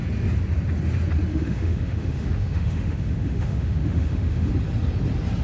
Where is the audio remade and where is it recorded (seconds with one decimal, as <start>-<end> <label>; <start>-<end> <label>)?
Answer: 0.0-1.3 recorded; 1.3-4.5 remade; 4.5-5.4 recorded